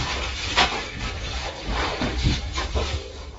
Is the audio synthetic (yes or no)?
yes